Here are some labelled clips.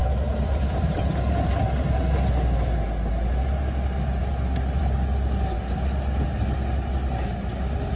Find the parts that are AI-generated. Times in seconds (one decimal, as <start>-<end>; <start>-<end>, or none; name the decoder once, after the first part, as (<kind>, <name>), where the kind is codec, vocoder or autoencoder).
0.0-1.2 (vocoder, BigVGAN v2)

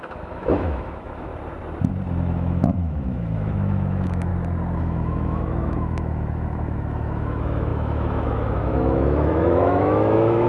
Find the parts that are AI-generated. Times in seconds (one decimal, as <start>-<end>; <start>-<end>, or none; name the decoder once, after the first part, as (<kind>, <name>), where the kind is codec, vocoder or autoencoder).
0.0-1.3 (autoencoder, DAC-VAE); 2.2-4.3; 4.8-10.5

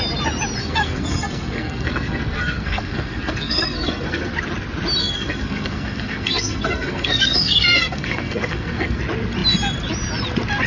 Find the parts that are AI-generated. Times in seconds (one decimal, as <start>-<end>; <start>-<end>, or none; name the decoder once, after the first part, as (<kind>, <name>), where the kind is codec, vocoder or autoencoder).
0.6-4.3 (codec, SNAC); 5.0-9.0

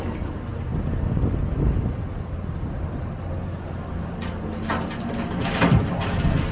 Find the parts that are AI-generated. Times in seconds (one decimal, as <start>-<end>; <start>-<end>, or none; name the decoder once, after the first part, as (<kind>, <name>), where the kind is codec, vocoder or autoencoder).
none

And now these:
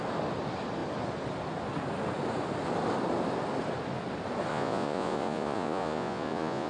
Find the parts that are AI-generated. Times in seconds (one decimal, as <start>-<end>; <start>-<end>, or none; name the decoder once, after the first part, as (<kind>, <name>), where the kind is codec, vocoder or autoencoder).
4.5-6.7 (vocoder, Vocos)

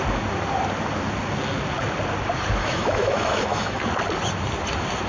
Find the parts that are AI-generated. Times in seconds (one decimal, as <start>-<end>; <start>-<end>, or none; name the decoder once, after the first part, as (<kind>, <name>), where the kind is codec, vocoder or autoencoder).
2.6-3.8 (autoencoder, DAC-VAE)

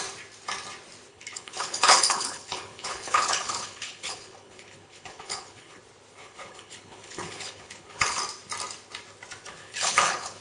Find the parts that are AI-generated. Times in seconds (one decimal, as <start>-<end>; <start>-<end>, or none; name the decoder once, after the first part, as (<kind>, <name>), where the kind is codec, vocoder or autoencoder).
1.1-5.8 (codec, HILCodec); 6.2-8.2; 9.6-10.4